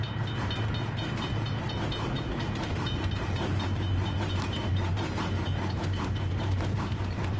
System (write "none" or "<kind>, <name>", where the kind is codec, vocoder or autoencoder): vocoder, BigVGAN v2